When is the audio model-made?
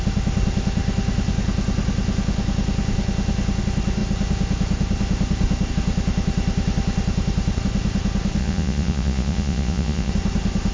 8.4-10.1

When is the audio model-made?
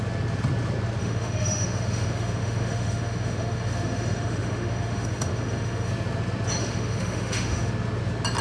1.0-5.9; 6.6-7.7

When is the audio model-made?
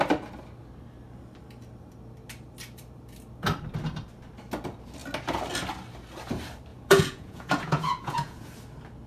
6.7-8.5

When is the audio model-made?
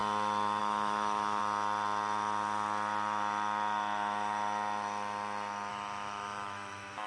0.6-1.4; 5.7-7.1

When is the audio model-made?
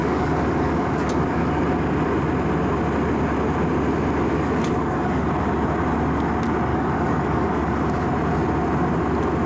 0.0-1.6; 4.3-5.3; 6.7-7.6